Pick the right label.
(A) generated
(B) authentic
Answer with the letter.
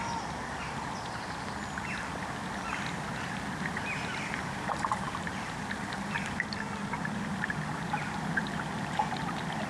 B